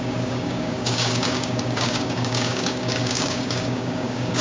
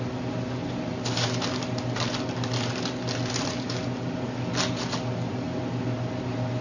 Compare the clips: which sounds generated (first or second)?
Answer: first